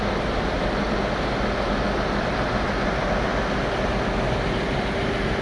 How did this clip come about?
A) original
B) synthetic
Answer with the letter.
A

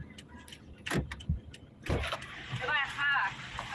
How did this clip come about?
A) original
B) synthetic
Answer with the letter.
A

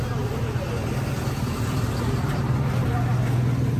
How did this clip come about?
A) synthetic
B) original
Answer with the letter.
B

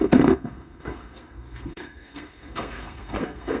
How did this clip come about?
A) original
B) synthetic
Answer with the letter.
B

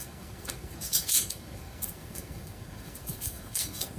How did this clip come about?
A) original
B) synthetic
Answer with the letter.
B